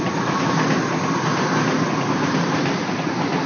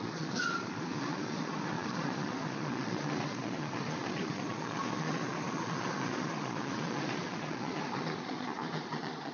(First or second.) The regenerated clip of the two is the second